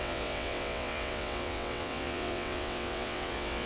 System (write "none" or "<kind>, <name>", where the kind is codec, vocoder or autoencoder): vocoder, WaveNeXt